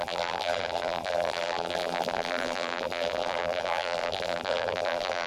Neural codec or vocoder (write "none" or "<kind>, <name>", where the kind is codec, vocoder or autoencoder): vocoder, BigVGAN v2